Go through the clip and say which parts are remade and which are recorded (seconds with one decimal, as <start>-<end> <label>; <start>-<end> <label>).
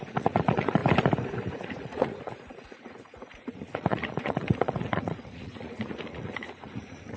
0.0-0.8 remade; 0.8-1.5 recorded; 1.5-7.2 remade